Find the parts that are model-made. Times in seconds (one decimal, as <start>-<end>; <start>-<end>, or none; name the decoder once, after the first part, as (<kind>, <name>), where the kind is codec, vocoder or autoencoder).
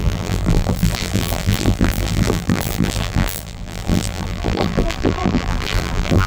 0.0-6.3 (vocoder, BigVGAN v2)